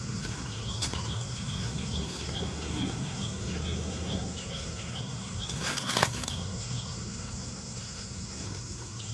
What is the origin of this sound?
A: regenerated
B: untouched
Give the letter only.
A